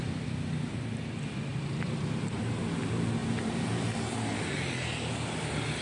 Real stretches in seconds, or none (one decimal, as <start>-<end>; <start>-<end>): 0.0-1.5; 2.7-3.2; 4.6-5.8